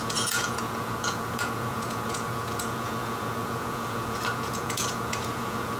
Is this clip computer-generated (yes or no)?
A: yes